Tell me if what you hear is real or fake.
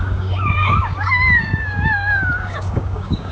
fake